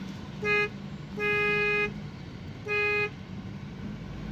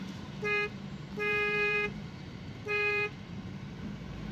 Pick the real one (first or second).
first